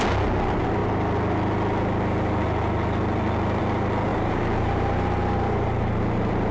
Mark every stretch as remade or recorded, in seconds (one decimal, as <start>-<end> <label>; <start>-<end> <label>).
0.0-4.1 recorded; 4.1-6.5 remade